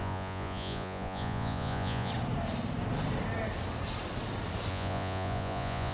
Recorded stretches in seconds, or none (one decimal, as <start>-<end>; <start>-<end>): 2.1-4.7